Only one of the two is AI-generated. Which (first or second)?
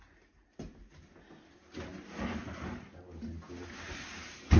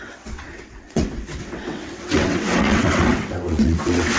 second